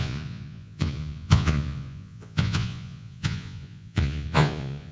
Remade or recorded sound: remade